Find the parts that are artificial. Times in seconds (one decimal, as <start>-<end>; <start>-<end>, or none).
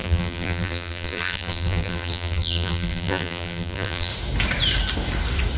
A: 0.0-4.1